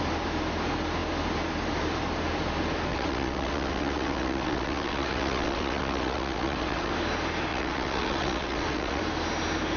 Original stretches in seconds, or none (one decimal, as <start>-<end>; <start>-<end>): 0.0-2.9; 6.9-7.5; 9.0-9.8